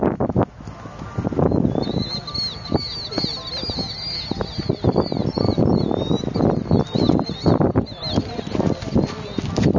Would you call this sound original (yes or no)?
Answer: yes